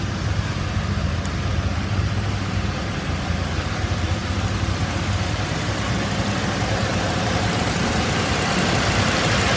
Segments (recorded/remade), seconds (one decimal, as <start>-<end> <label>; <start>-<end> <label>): 0.0-4.2 remade; 4.2-5.1 recorded; 5.1-9.6 remade